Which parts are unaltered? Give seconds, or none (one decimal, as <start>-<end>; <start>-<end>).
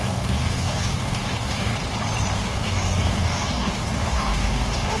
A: 1.7-2.3